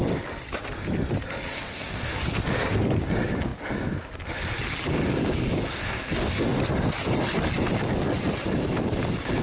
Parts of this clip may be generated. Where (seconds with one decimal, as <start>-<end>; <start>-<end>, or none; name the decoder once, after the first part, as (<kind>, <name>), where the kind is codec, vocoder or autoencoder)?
1.5-2.1 (codec, DAC); 5.8-6.6

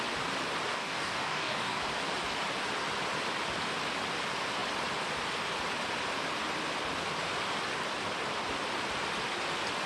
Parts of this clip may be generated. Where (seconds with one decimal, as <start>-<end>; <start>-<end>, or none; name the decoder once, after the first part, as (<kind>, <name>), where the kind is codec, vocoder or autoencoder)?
0.7-1.8 (codec, DAC)